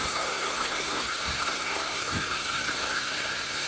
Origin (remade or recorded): remade